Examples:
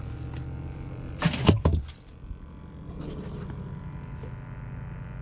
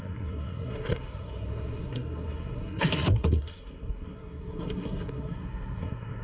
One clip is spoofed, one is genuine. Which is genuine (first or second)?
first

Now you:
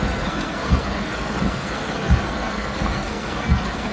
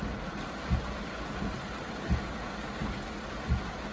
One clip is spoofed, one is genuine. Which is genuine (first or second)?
second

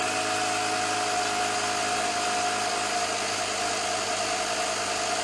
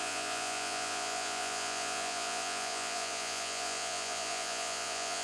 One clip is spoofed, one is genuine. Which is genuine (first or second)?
first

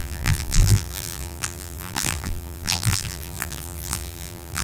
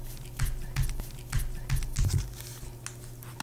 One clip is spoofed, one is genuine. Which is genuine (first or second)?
second